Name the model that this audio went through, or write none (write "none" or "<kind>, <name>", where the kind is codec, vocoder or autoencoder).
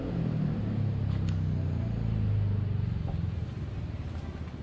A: none